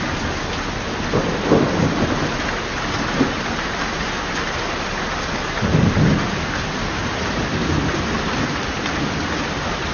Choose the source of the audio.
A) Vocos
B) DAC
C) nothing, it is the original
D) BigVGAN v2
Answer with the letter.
C